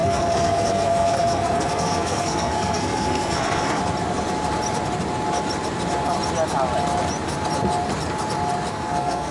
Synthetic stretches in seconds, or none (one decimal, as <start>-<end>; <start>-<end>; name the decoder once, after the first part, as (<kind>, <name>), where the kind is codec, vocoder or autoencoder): 0.0-3.8 (codec, SNAC); 8.7-9.3